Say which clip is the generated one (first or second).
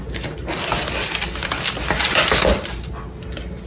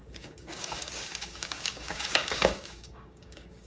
second